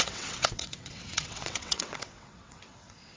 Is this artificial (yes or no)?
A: yes